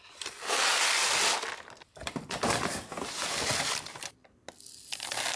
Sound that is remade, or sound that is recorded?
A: recorded